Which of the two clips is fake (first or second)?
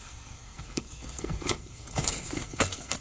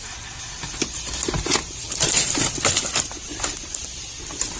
first